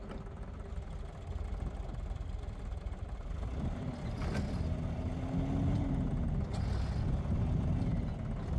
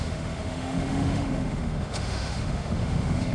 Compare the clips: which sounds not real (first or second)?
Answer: second